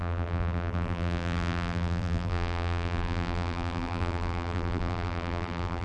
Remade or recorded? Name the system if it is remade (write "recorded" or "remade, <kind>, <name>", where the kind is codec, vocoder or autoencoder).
remade, vocoder, BigVGAN v2